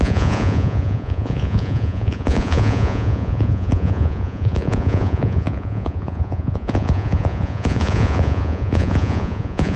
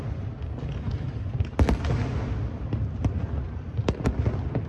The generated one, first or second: first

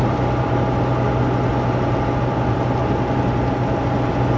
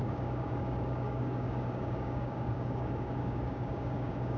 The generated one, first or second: second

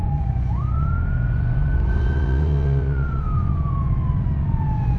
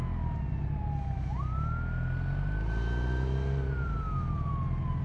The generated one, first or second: first